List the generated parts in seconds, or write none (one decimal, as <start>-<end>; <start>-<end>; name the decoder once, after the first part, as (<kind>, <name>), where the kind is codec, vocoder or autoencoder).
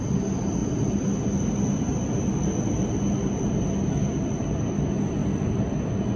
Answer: none